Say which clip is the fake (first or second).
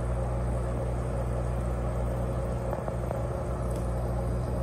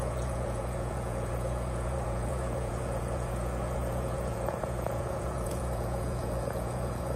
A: second